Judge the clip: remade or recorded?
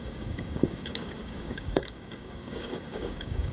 remade